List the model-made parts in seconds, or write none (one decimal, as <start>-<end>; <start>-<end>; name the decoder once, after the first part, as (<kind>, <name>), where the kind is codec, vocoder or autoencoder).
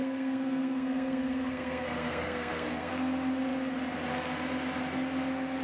0.0-2.9 (codec, SNAC)